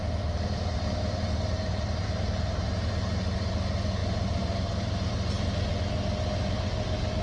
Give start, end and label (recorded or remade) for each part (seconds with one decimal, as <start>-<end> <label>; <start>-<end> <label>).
0.0-2.7 remade; 2.7-4.0 recorded; 4.0-5.8 remade; 5.8-7.2 recorded